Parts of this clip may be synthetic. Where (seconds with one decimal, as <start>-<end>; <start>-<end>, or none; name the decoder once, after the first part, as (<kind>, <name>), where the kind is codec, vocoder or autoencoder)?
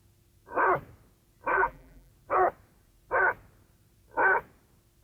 1.5-2.1 (vocoder, BigVGAN v2)